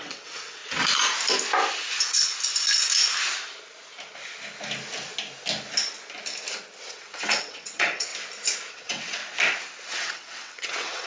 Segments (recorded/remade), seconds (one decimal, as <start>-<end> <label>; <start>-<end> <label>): 0.0-0.6 remade; 0.6-1.9 recorded; 1.9-2.3 remade; 2.3-6.9 recorded; 6.9-8.1 remade; 8.1-8.7 recorded; 8.7-9.2 remade; 9.2-9.9 recorded; 9.9-11.1 remade